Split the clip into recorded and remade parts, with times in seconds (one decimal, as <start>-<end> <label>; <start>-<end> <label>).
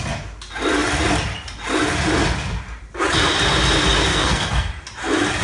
0.0-4.1 recorded; 4.1-4.7 remade; 4.7-5.4 recorded